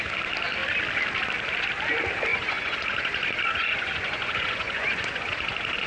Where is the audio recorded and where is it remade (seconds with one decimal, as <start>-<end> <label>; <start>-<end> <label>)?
0.0-2.3 recorded; 2.3-5.9 remade